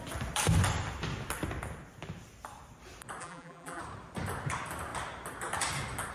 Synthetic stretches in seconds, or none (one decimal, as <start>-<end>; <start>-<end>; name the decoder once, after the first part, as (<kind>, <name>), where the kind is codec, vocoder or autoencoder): 3.2-3.8 (vocoder, BigVGAN v2)